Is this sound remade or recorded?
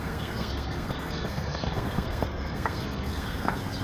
remade